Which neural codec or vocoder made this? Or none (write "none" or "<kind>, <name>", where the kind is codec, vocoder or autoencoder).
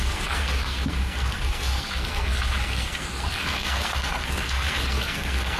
codec, SNAC